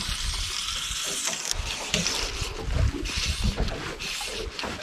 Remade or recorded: recorded